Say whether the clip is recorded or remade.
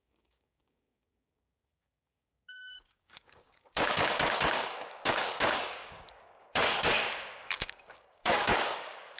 remade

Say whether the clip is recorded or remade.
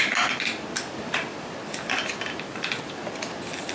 recorded